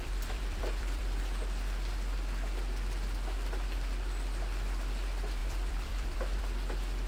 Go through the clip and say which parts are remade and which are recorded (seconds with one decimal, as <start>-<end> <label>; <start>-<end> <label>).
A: 0.0-1.2 remade; 1.2-5.4 recorded; 5.4-6.4 remade; 6.4-7.1 recorded